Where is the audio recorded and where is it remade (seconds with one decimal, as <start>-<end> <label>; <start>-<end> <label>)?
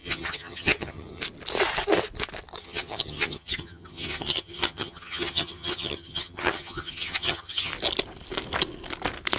0.0-1.2 remade; 1.2-2.6 recorded; 2.6-7.7 remade; 7.7-9.4 recorded